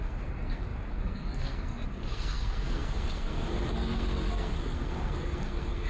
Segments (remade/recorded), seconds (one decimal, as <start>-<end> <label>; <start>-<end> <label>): 0.0-5.9 remade